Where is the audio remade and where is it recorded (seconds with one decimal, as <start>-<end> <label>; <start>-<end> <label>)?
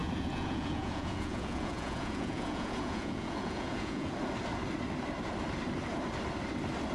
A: 0.0-4.1 remade; 4.1-6.9 recorded